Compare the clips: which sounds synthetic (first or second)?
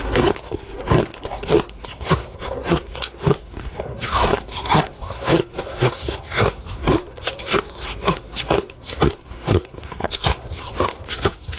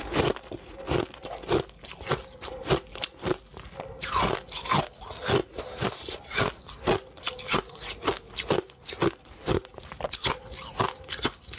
first